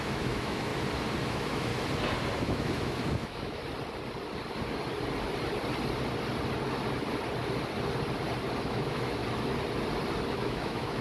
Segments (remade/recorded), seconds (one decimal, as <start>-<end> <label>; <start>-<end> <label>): 0.0-0.7 remade; 0.7-1.2 recorded; 1.2-1.7 remade; 1.7-2.4 recorded; 2.4-3.6 remade; 3.6-8.6 recorded; 8.6-9.2 remade; 9.2-10.3 recorded; 10.3-11.0 remade